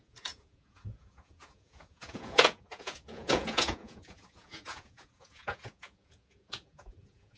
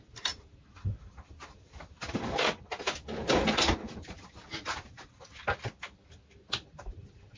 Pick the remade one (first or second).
first